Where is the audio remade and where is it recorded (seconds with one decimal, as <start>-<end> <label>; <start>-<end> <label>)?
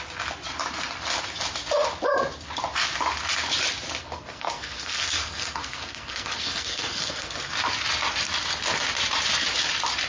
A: 0.0-4.0 recorded; 4.0-7.5 remade; 7.5-10.1 recorded